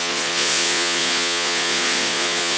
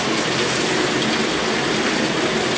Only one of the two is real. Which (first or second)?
second